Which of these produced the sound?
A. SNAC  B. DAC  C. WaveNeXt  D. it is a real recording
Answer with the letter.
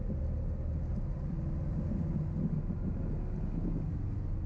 D